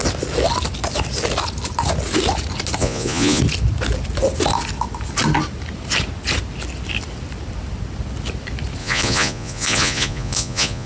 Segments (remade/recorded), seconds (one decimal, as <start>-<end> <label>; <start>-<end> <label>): 0.0-2.8 recorded; 2.8-3.4 remade; 3.4-8.8 recorded; 8.8-10.9 remade